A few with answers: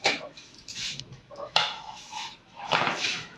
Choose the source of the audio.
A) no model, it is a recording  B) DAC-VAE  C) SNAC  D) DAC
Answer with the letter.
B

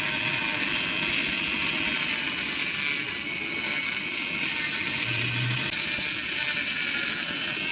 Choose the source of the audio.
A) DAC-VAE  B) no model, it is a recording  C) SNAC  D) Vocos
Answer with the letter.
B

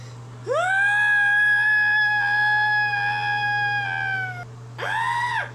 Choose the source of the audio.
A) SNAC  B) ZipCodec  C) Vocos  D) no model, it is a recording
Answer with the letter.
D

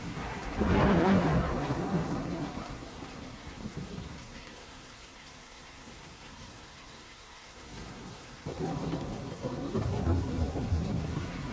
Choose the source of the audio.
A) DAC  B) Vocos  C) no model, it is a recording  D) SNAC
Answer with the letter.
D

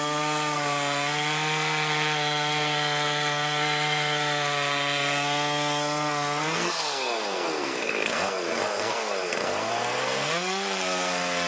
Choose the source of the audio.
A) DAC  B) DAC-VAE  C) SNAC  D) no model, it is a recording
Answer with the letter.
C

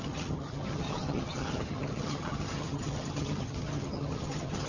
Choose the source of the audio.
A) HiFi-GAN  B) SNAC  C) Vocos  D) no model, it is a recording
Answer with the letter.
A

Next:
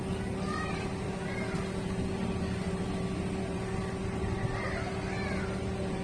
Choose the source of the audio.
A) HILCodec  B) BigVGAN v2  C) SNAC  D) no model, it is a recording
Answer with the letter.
D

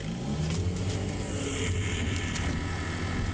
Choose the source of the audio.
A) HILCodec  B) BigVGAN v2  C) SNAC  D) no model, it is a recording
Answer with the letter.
D